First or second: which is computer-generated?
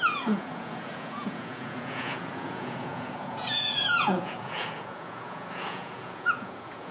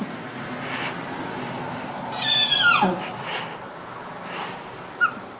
first